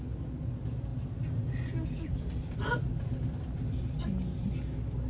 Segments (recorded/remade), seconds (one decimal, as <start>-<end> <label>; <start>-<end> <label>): 0.0-5.1 recorded